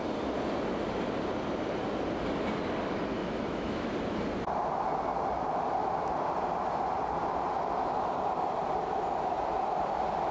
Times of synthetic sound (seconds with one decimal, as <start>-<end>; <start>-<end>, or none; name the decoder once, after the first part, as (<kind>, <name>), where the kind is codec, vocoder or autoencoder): 3.2-3.9 (autoencoder, DAC-VAE)